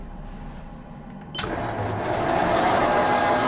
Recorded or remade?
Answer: recorded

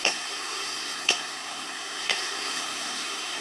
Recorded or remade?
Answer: remade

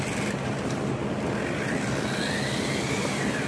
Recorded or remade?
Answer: recorded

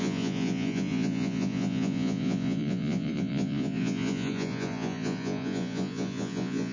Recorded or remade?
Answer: remade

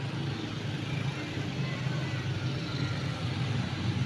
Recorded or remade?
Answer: recorded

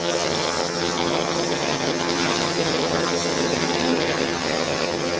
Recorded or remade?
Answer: remade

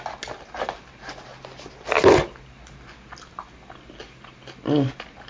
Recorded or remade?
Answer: recorded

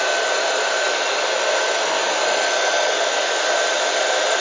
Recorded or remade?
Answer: recorded